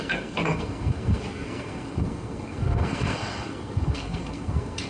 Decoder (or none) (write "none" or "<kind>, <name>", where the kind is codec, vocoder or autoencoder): codec, SNAC